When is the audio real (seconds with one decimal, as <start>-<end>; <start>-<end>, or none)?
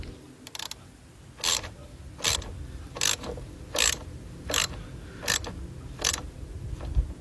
0.0-7.2